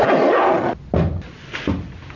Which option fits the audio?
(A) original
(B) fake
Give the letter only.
A